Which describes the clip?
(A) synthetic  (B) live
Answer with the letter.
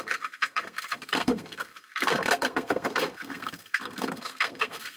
A